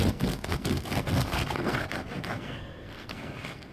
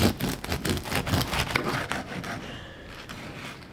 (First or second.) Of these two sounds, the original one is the second